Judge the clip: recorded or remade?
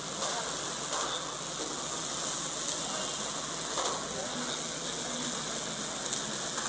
recorded